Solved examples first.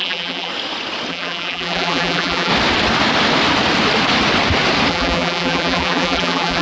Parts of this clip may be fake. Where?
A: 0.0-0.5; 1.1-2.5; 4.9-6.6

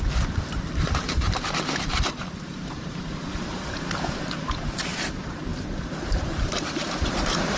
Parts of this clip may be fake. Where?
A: 0.0-5.5; 6.2-7.6

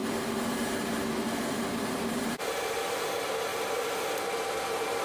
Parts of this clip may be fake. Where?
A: 0.0-3.0; 3.5-4.1

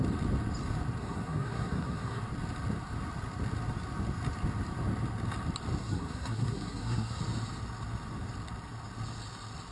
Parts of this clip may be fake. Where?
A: 1.0-2.2; 5.8-7.2

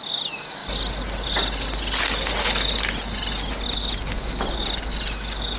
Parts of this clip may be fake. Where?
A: none

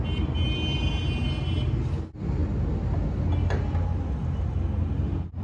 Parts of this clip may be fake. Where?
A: none

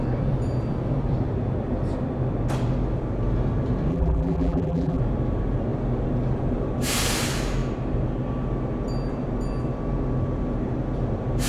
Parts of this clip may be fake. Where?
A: 3.9-5.0

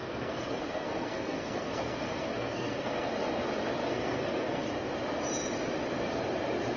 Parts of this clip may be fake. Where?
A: 0.0-3.1; 3.8-4.7